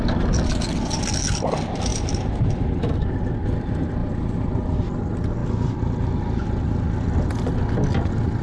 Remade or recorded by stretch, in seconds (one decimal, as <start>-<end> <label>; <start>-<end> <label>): 0.0-1.9 recorded; 1.9-2.4 remade; 2.4-4.0 recorded; 4.0-4.5 remade; 4.5-8.4 recorded